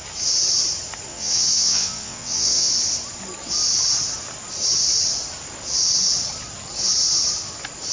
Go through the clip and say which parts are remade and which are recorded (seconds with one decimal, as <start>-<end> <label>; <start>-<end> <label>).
0.0-1.1 recorded; 1.1-2.7 remade; 2.7-7.9 recorded